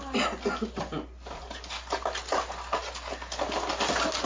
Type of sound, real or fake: real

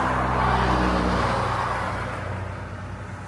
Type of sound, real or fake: real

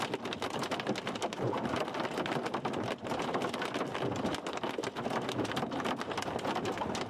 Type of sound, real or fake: real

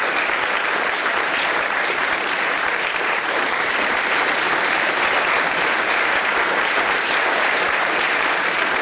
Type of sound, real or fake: fake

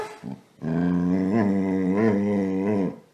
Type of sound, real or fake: real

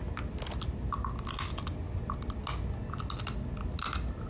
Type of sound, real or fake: real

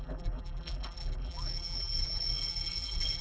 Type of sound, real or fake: fake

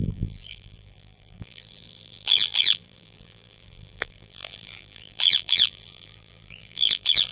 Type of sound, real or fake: fake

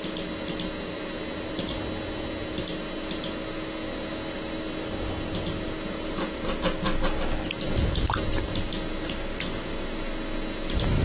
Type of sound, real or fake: real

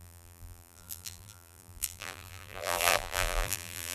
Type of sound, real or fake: fake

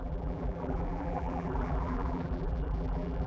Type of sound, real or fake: fake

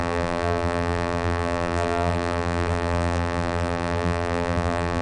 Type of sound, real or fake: fake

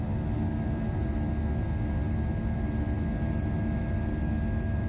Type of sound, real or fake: real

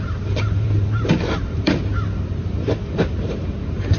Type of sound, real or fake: fake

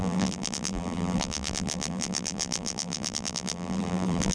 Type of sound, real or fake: fake